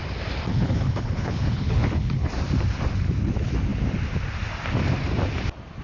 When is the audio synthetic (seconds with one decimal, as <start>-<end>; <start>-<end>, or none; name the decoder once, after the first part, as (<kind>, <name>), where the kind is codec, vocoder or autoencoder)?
0.5-2.3 (codec, HILCodec)